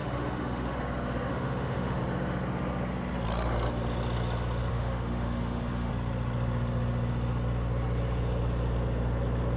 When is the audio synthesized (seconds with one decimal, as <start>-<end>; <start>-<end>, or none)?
0.0-0.8; 1.3-2.0; 4.7-5.9